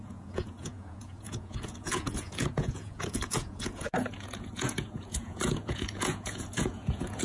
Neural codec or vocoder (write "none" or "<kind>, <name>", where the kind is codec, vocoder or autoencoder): vocoder, Vocos